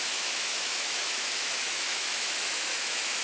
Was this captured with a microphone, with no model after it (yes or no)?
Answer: no